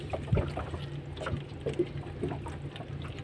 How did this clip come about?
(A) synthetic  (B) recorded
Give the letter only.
B